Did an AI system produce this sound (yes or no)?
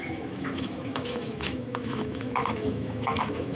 yes